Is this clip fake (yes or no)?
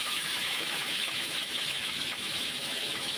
yes